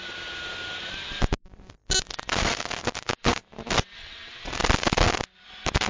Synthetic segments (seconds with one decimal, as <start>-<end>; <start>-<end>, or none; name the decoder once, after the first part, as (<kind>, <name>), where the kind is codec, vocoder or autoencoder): 4.0-4.5 (vocoder, WaveNeXt)

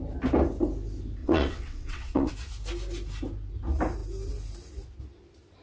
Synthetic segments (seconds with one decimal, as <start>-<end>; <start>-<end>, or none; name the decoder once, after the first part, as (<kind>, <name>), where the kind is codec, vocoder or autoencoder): 1.2-2.3 (vocoder, WaveNeXt)

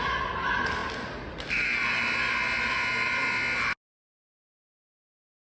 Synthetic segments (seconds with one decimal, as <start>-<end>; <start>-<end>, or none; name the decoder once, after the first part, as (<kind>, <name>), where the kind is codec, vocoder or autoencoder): none

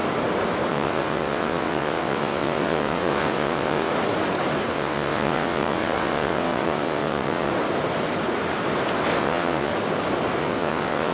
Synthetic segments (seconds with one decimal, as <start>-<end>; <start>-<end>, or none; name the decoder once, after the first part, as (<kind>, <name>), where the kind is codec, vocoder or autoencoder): 0.7-3.9 (vocoder, WaveNeXt); 4.7-7.5; 9.2-9.7; 10.4-11.1

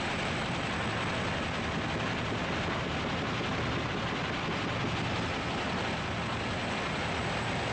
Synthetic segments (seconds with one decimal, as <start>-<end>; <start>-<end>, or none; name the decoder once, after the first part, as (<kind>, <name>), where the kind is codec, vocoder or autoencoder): none

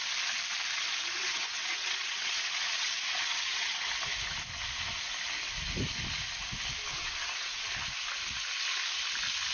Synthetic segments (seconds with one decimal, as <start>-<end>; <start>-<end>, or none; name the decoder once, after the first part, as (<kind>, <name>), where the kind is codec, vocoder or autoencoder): 1.2-3.9 (vocoder, WaveNeXt); 6.9-7.7